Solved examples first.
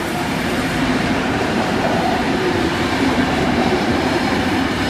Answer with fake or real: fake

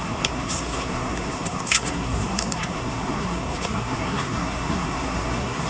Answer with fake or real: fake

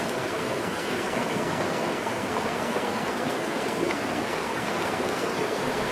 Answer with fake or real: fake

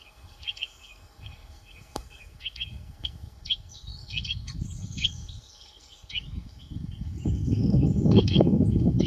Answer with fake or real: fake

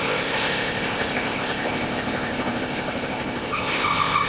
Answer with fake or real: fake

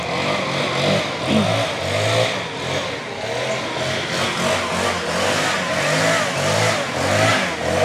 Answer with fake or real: real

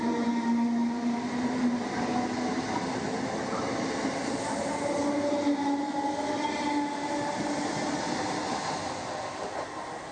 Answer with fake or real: real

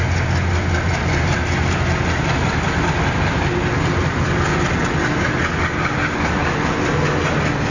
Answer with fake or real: real